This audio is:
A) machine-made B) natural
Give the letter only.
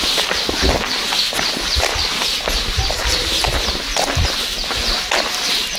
B